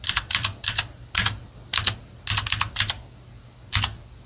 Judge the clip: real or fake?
real